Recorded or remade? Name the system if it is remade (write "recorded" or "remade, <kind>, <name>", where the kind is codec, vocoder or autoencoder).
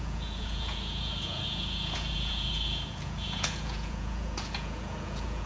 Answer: remade, vocoder, Vocos